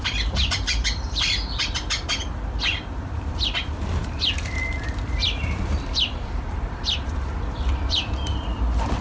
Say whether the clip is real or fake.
fake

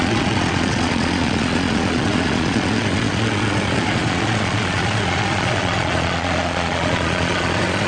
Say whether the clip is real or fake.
fake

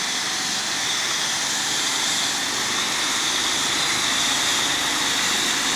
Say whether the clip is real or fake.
real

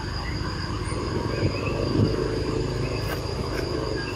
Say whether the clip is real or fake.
real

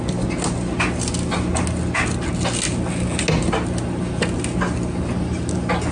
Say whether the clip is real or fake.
real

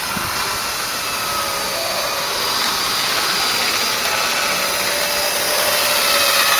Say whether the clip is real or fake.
real